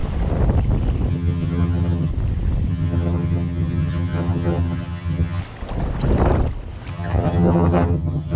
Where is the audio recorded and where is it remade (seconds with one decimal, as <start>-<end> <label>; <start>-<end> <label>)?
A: 0.0-1.1 recorded; 1.1-2.1 remade; 2.1-2.7 recorded; 2.7-5.4 remade; 5.4-6.9 recorded; 6.9-8.4 remade